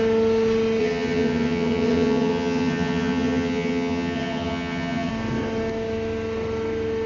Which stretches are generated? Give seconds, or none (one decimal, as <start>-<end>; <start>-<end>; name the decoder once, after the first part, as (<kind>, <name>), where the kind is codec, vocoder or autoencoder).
0.8-5.1 (vocoder, HiFi-GAN)